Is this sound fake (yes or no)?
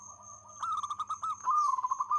no